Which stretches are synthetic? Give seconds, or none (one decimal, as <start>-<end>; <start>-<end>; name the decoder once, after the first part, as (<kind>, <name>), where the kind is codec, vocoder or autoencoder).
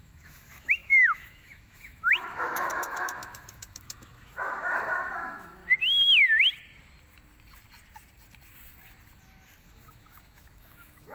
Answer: 0.0-5.6 (autoencoder, DAC-VAE); 9.6-11.1